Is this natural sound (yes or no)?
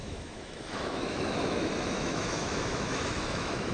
no